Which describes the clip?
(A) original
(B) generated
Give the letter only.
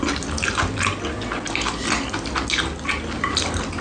A